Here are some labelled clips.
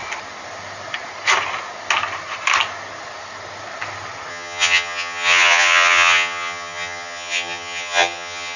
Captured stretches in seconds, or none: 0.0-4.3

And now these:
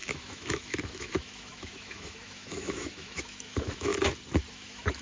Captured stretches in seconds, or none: 3.9-4.5

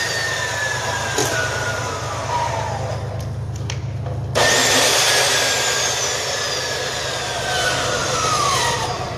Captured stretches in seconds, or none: 0.0-1.2; 2.5-8.0; 8.6-9.2

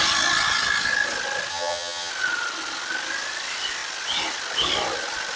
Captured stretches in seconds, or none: 0.0-1.5; 2.1-5.4

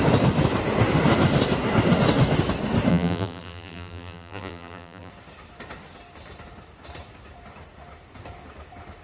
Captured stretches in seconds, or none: 0.0-2.9; 5.1-9.0

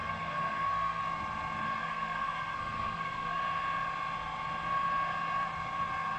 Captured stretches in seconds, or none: 1.0-1.8; 3.4-6.2